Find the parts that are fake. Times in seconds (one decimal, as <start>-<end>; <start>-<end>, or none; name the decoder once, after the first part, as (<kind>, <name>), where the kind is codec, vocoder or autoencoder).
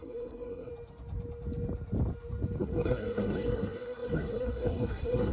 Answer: 0.0-0.7 (codec, SNAC); 2.6-5.3